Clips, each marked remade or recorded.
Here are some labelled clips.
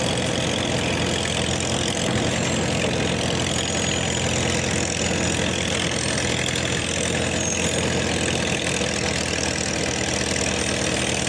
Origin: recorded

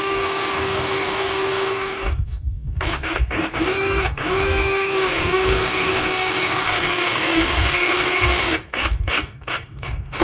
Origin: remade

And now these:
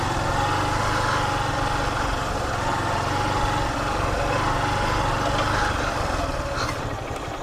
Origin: recorded